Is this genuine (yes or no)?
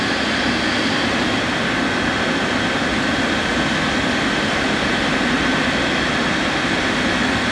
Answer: yes